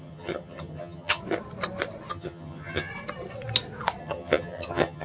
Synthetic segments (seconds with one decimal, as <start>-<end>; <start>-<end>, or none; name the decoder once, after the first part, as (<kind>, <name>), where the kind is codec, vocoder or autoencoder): 0.0-1.2 (vocoder, HiFi-GAN); 2.1-2.9; 4.0-5.0